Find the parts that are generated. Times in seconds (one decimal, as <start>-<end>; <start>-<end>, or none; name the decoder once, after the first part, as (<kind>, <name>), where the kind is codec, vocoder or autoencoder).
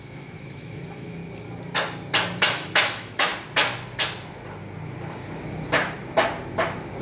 0.0-1.2 (autoencoder, DAC-VAE); 2.4-3.3